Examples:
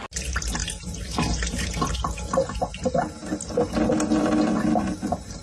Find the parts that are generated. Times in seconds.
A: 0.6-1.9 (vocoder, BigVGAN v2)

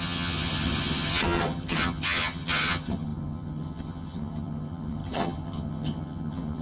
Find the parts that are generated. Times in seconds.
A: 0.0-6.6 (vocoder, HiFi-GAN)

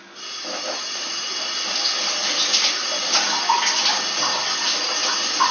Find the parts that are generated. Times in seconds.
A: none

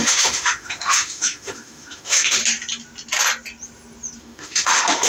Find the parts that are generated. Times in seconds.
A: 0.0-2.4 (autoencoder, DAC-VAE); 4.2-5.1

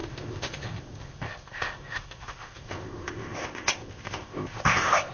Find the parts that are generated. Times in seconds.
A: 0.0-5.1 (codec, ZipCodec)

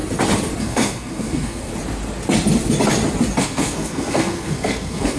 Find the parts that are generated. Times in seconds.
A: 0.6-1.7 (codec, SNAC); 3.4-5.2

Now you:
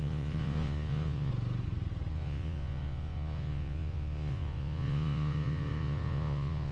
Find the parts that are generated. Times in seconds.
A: 0.0-1.3 (vocoder, Vocos); 2.1-6.7